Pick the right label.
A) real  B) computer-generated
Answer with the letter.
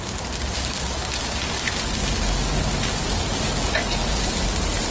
A